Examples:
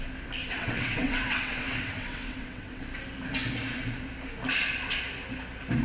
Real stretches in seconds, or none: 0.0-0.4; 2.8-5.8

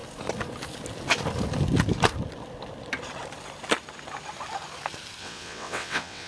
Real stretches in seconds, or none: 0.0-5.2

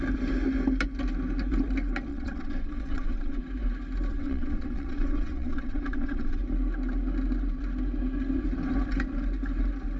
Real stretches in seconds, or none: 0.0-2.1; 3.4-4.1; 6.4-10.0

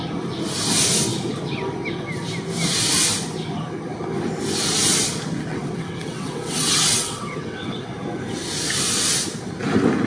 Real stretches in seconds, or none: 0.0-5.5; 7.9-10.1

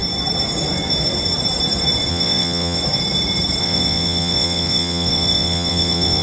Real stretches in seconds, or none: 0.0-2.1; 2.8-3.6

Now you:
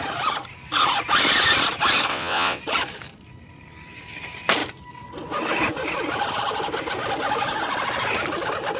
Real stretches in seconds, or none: 0.0-2.1; 2.6-8.8

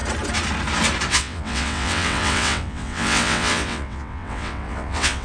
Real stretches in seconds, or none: 0.0-1.1